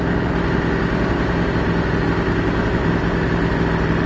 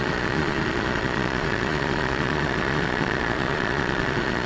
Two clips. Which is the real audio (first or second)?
first